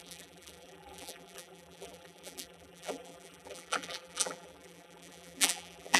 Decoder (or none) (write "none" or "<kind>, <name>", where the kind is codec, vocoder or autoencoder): vocoder, BigVGAN v2